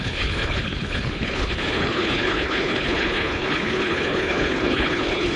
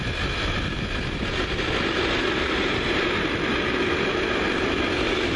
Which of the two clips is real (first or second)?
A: second